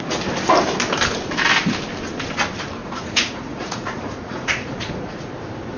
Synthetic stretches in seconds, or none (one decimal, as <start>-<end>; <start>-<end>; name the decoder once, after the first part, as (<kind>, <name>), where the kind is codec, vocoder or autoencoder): 2.8-5.3 (vocoder, Vocos)